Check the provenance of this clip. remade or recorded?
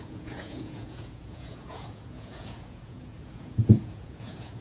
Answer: remade